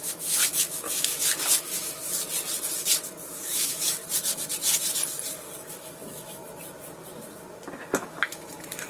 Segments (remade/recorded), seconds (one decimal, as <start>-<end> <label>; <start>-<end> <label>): 0.0-2.0 remade; 2.0-3.3 recorded; 3.3-4.0 remade; 4.0-5.7 recorded; 5.7-6.4 remade; 6.4-8.0 recorded; 8.0-8.9 remade